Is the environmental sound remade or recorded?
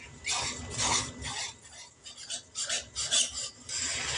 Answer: recorded